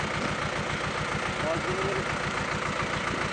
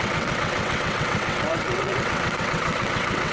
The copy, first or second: second